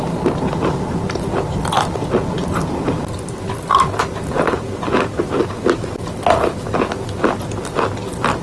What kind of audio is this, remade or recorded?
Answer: recorded